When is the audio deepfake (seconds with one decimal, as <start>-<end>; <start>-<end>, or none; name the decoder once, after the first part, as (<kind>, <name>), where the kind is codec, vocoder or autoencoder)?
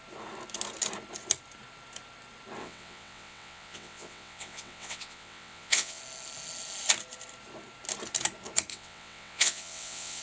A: 2.6-6.0 (vocoder, WaveNeXt); 8.7-10.2